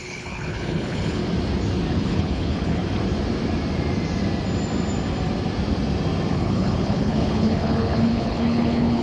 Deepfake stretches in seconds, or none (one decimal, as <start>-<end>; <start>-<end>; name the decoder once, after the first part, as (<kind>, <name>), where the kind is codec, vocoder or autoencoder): 0.0-1.2 (codec, HILCodec); 1.9-2.8; 6.3-9.0